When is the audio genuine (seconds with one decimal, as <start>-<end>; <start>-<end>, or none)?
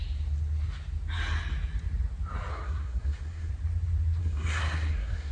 0.0-2.5; 3.5-4.2